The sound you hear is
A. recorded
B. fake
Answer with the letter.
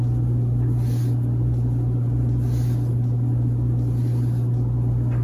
A